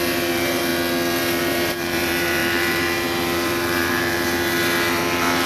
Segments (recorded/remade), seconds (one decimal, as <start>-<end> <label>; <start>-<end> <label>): 0.0-0.7 remade; 0.7-1.2 recorded; 1.2-5.5 remade